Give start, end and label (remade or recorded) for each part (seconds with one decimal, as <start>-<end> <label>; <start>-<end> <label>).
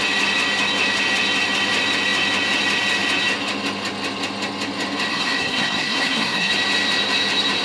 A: 0.0-5.1 recorded; 5.1-6.5 remade; 6.5-7.6 recorded